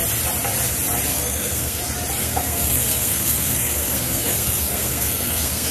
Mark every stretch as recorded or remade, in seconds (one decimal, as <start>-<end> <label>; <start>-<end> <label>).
0.0-1.1 recorded; 1.1-1.8 remade; 1.8-2.2 recorded; 2.2-5.7 remade